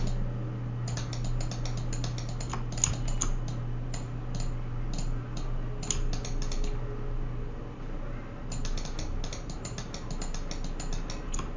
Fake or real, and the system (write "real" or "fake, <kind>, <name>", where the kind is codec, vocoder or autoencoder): real